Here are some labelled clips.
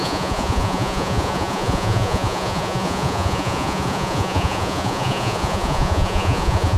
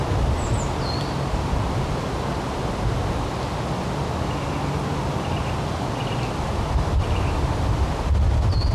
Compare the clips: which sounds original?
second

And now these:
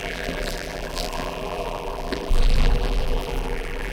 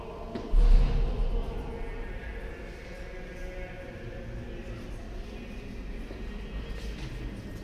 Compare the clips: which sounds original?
second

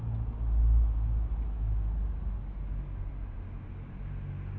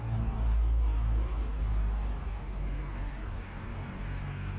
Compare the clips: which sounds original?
first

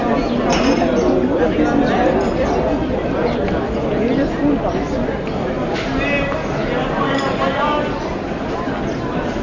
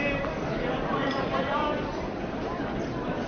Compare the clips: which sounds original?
first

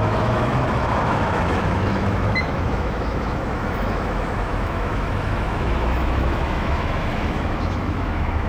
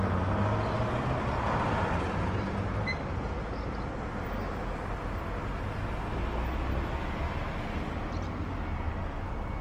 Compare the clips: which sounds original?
second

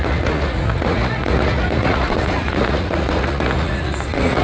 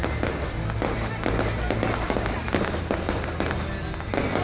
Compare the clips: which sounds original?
second